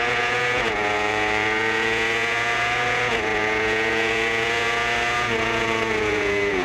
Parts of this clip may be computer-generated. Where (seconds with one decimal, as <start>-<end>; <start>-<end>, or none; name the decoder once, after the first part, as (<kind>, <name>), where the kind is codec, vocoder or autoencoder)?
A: 0.0-6.6 (vocoder, Vocos)